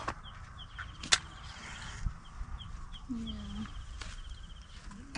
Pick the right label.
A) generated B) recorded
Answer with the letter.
B